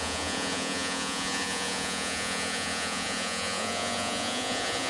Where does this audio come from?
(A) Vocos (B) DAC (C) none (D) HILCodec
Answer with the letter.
A